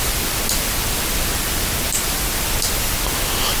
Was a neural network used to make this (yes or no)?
no